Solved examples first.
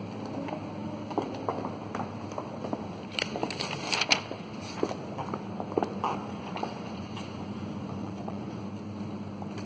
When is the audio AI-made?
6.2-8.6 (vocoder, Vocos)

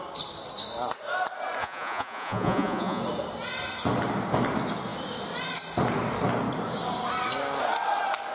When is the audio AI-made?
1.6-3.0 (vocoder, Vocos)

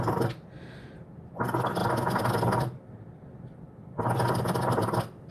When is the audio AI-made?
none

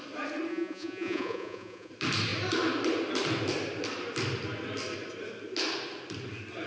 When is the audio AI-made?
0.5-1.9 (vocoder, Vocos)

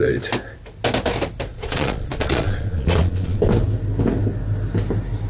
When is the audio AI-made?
1.5-3.4 (vocoder, Vocos)

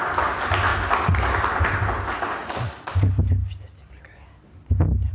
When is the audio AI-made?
none

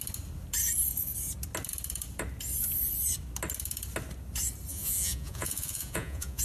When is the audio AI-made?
4.7-6.4 (vocoder, Vocos)